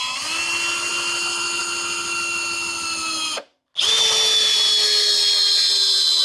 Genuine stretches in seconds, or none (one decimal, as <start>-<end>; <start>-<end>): 0.0-6.2